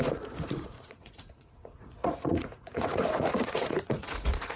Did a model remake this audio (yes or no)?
yes